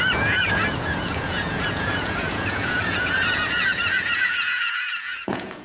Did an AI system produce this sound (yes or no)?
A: yes